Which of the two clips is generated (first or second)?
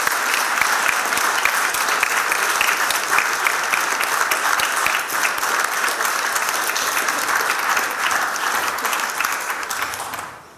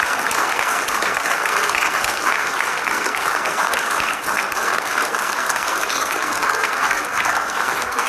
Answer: second